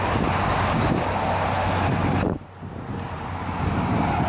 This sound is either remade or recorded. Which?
recorded